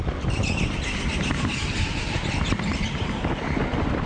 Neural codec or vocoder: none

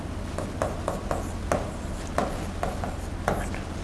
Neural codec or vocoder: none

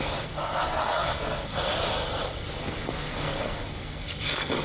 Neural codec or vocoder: codec, SNAC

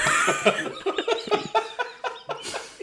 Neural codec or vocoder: none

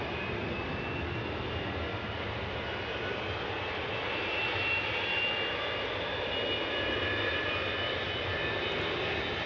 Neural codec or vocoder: none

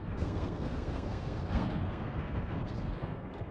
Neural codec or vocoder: codec, SNAC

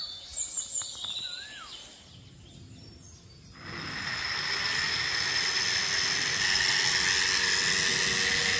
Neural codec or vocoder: none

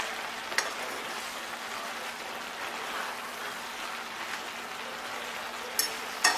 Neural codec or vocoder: none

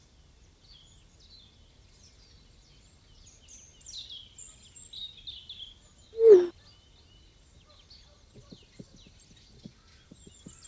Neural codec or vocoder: none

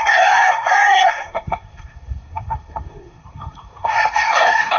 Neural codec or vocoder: codec, SNAC